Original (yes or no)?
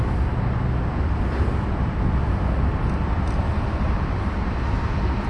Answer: yes